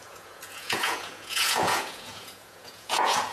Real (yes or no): no